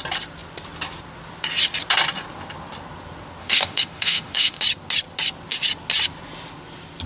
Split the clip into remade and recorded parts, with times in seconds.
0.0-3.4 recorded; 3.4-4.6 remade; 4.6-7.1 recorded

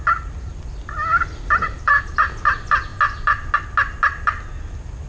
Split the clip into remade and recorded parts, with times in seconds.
0.0-5.1 recorded

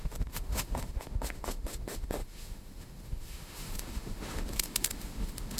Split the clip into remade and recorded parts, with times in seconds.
0.0-5.6 remade

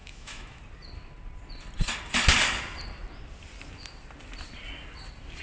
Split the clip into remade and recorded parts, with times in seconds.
0.0-0.6 remade; 0.6-5.4 recorded

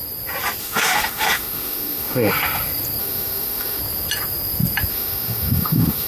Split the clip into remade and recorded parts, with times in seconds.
0.0-0.6 recorded; 0.6-2.3 remade; 2.3-3.0 recorded; 3.0-3.8 remade; 3.8-4.9 recorded; 4.9-6.1 remade

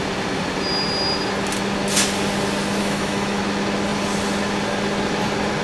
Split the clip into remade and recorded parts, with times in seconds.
0.0-2.8 recorded; 2.8-3.4 remade; 3.4-5.6 recorded

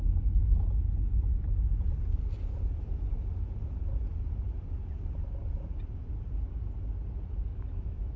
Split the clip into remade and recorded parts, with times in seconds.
0.0-7.5 recorded; 7.5-8.2 remade

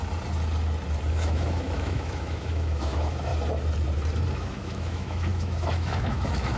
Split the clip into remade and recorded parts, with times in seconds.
0.0-1.1 recorded; 1.1-3.3 remade; 3.3-4.3 recorded; 4.3-6.6 remade